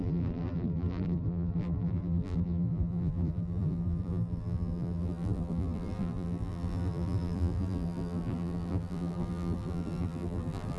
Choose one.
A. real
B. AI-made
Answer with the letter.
B